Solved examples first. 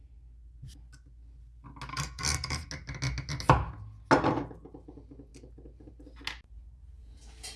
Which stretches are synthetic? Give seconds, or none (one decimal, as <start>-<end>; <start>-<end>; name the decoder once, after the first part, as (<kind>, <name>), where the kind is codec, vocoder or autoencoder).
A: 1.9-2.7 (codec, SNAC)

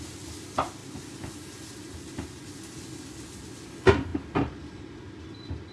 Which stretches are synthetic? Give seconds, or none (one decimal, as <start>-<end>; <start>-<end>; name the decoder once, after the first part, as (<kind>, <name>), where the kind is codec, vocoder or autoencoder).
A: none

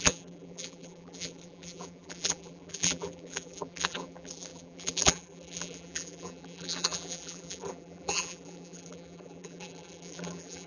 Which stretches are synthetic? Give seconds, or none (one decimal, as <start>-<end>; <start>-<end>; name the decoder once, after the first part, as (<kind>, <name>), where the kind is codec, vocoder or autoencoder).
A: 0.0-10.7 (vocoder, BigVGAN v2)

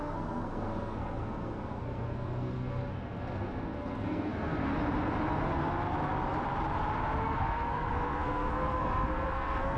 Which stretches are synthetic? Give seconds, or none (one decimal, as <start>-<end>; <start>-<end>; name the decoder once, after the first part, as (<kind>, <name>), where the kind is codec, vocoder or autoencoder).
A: 0.0-4.7 (codec, SNAC); 7.2-9.8

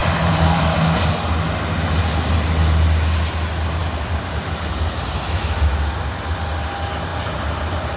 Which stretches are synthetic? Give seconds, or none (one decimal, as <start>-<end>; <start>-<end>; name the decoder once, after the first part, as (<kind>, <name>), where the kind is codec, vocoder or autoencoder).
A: 0.0-1.1 (vocoder, BigVGAN v2); 3.8-4.7; 7.1-8.0

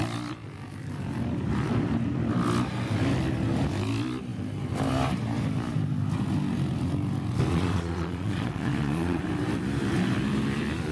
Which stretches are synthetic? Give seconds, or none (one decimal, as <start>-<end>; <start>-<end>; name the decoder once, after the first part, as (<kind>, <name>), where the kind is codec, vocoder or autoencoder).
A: 7.5-9.2 (vocoder, Vocos)

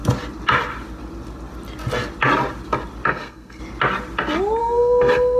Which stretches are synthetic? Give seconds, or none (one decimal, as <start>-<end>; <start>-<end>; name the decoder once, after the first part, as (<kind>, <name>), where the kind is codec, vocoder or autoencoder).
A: 3.1-3.6 (codec, SNAC); 4.6-5.4